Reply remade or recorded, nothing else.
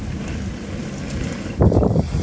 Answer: recorded